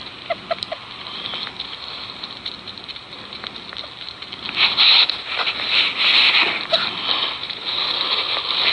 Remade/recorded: recorded